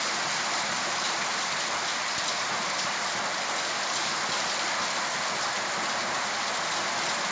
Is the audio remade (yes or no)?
no